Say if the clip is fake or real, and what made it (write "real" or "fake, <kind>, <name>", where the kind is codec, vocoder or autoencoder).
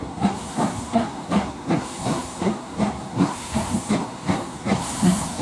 fake, codec, SNAC